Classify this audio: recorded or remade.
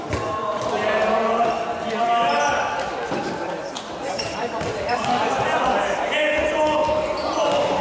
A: recorded